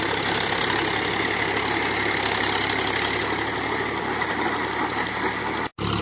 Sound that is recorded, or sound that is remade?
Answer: recorded